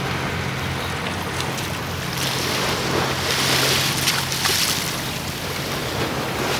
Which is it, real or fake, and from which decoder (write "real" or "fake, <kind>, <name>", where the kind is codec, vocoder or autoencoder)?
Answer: real